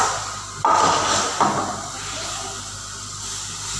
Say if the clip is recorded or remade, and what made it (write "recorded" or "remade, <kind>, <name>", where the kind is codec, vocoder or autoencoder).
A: recorded